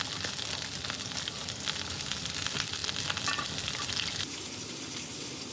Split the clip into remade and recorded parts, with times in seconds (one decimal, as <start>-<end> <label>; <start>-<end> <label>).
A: 0.0-5.5 recorded